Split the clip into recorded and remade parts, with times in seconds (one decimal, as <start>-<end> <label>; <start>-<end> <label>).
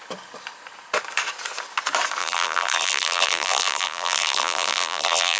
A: 0.0-2.2 recorded; 2.2-5.4 remade